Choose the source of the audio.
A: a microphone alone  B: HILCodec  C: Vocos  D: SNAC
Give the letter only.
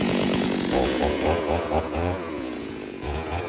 C